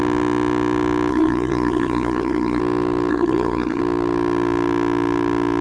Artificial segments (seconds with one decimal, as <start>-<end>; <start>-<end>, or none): 1.1-2.6; 3.1-3.8